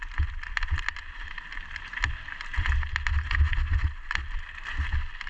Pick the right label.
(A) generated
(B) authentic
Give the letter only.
B